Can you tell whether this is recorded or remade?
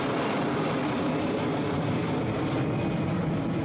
recorded